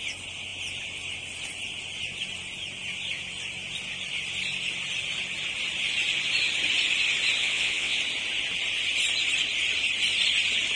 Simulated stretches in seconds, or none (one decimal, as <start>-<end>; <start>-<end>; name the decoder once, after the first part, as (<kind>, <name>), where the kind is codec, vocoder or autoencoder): 7.4-8.0 (vocoder, WaveNeXt)